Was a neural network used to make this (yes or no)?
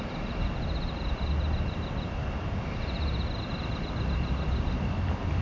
no